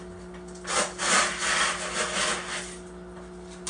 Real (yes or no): yes